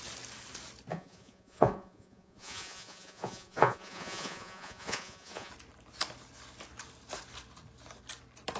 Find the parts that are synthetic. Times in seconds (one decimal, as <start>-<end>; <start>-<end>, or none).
0.9-5.5